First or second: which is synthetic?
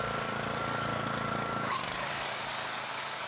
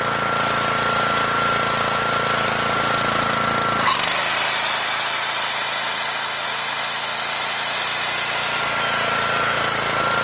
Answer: first